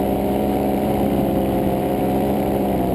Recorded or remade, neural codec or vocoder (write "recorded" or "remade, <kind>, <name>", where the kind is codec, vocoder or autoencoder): remade, vocoder, BigVGAN v2